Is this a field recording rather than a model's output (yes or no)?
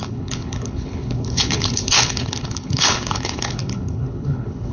no